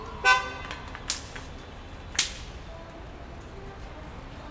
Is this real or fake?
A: real